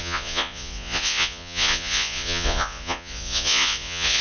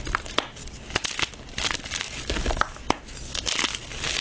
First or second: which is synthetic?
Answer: first